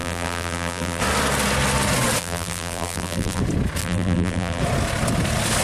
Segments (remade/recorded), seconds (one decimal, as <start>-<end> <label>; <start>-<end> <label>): 0.0-1.0 remade; 1.0-2.2 recorded; 2.2-3.4 remade; 3.4-3.8 recorded; 3.8-4.6 remade; 4.6-5.6 recorded